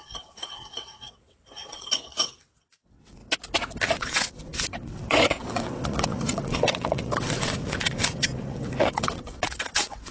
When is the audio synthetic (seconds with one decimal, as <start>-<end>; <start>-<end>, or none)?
0.0-3.2; 3.9-10.1